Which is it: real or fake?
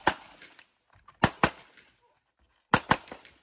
real